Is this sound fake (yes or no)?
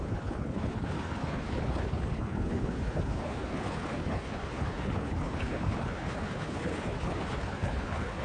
yes